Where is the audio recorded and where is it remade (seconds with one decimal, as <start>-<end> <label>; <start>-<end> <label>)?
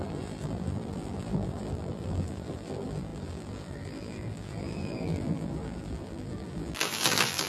0.0-7.5 remade